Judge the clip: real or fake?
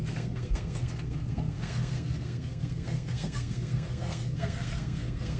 fake